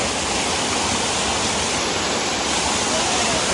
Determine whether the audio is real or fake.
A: real